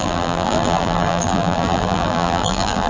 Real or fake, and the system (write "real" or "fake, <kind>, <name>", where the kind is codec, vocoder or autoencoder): fake, vocoder, BigVGAN v2